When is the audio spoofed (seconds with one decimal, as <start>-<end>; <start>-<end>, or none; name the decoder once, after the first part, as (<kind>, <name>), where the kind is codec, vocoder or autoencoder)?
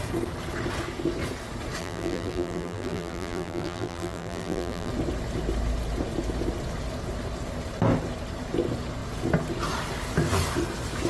1.8-4.9 (vocoder, BigVGAN v2)